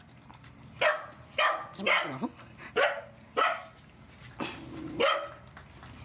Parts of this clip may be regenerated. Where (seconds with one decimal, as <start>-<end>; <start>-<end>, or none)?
none